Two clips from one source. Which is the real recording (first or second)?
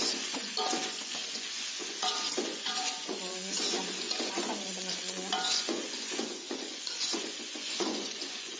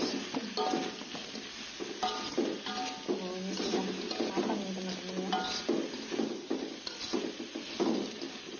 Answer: second